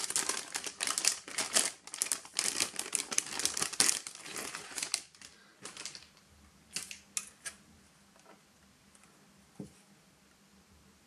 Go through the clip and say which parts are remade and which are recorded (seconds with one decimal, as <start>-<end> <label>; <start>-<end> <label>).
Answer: 0.0-4.2 remade; 4.2-11.1 recorded